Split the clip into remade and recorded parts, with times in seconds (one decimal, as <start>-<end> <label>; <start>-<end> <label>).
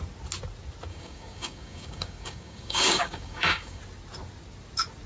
0.0-0.9 recorded; 0.9-3.8 remade; 3.8-5.1 recorded